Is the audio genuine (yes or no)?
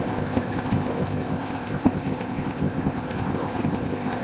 no